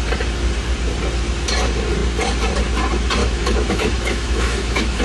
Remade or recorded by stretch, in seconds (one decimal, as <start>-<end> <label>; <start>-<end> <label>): 0.0-3.2 recorded; 3.2-5.0 remade